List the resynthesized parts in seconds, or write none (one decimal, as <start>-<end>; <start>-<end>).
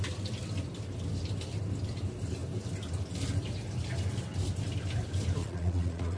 5.4-6.2